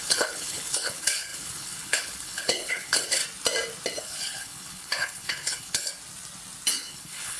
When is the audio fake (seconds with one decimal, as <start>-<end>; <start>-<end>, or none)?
0.0-3.2; 4.0-5.9; 6.7-7.4